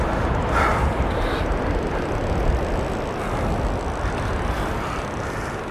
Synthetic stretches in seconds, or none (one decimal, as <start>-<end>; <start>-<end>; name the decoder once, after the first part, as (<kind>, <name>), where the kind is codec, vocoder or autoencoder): none